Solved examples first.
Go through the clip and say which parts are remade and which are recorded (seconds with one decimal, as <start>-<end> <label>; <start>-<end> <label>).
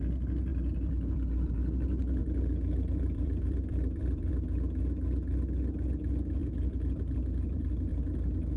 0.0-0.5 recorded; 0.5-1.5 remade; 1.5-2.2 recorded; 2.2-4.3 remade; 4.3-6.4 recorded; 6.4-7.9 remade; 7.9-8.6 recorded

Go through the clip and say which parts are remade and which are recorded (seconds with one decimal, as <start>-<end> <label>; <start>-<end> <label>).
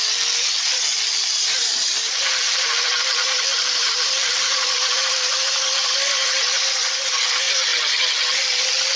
0.0-1.2 recorded; 1.2-5.3 remade; 5.3-9.0 recorded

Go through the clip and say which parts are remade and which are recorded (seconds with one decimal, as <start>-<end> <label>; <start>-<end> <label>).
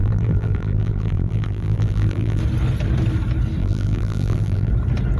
0.0-2.4 remade; 2.4-3.6 recorded; 3.6-4.7 remade; 4.7-5.2 recorded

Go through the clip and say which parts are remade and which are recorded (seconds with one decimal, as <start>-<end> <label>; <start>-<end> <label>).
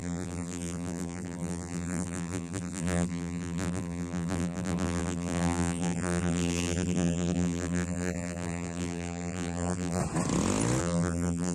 0.0-10.0 remade; 10.0-10.8 recorded; 10.8-11.5 remade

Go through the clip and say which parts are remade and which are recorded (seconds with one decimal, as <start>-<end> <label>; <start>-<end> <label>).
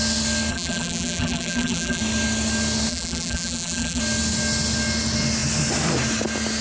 0.0-0.5 recorded; 0.5-2.0 remade; 2.0-2.9 recorded; 2.9-4.0 remade; 4.0-6.6 recorded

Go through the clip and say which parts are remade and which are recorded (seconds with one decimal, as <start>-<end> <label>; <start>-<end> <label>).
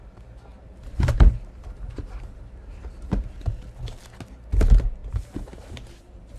0.0-0.5 recorded; 0.5-3.8 remade; 3.8-5.0 recorded; 5.0-6.4 remade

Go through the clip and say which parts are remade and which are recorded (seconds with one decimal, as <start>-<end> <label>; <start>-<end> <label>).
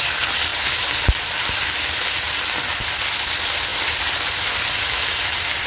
0.0-0.5 recorded; 0.5-2.6 remade; 2.6-3.7 recorded; 3.7-5.7 remade